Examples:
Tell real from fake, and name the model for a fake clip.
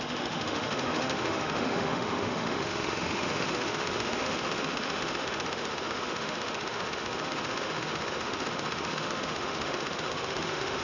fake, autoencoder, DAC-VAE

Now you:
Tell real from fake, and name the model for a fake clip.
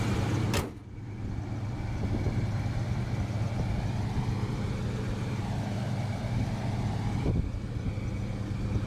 real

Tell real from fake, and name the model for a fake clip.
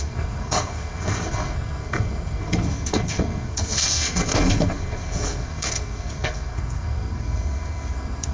fake, codec, SNAC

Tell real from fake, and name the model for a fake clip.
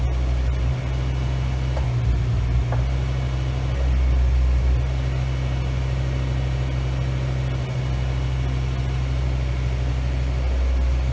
real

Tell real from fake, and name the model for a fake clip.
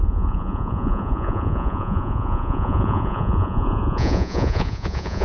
fake, vocoder, Vocos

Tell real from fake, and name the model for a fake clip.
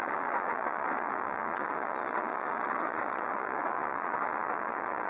fake, vocoder, Vocos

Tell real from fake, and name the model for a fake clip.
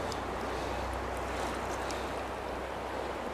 real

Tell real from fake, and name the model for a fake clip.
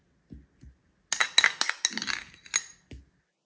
real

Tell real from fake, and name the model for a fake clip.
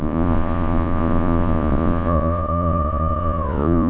fake, vocoder, Vocos